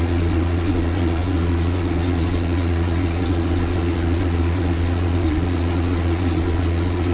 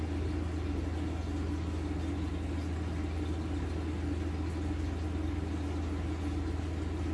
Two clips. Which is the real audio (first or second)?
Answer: second